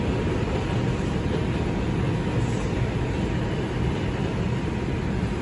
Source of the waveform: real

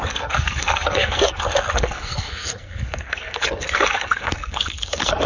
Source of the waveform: fake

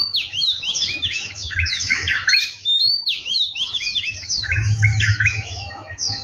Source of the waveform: fake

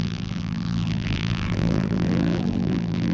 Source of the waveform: fake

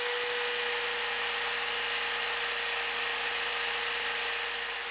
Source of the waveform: real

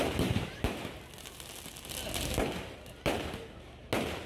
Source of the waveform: real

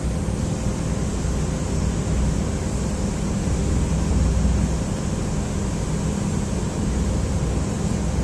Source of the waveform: real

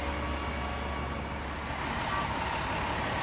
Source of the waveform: real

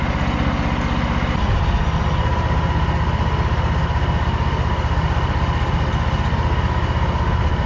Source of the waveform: real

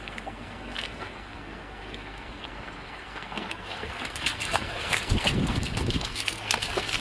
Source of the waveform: fake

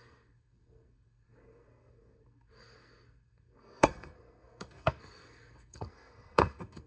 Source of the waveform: fake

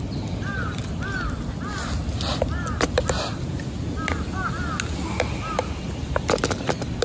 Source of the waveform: real